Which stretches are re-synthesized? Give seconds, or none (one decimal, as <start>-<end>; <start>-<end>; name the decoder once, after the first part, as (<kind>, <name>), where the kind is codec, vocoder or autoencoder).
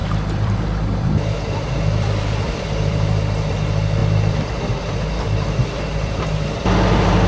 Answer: 0.0-3.2 (vocoder, BigVGAN v2); 4.0-7.3